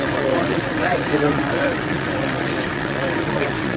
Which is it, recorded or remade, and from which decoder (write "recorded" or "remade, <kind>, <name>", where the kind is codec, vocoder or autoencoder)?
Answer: remade, vocoder, WaveNeXt